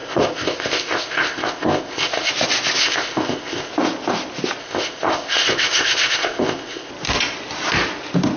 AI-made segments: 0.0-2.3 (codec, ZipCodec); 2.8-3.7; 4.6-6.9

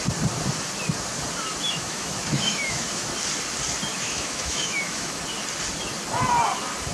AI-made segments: 1.6-3.1 (autoencoder, DAC-VAE); 3.9-5.2

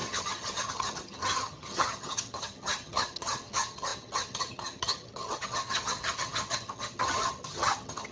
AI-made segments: 0.0-8.1 (vocoder, HiFi-GAN)